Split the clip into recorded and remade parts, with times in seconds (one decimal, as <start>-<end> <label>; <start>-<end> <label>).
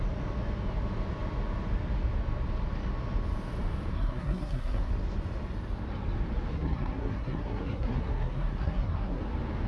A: 0.0-3.9 recorded; 3.9-4.9 remade; 4.9-6.5 recorded; 6.5-9.2 remade; 9.2-9.7 recorded